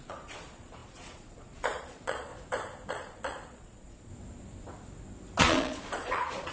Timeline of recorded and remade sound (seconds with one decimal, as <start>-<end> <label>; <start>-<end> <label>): 0.0-2.3 remade; 2.3-2.9 recorded; 2.9-4.1 remade; 4.1-5.4 recorded; 5.4-6.5 remade